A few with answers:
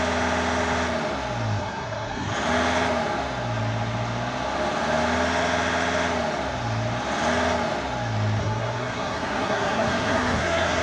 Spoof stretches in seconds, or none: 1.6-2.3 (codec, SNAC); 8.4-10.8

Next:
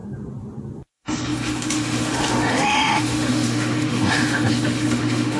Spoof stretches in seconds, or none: 0.9-5.4 (autoencoder, DAC-VAE)